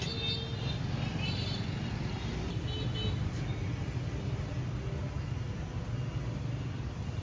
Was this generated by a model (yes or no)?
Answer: no